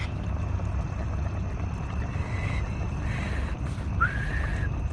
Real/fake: real